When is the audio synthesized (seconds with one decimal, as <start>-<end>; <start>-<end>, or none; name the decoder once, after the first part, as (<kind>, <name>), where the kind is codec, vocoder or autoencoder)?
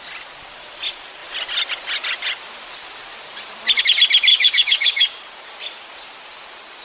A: 4.3-5.2 (codec, DAC)